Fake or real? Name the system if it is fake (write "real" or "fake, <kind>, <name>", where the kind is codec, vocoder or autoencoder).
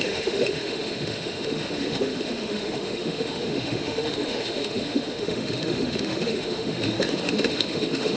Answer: fake, autoencoder, DAC-VAE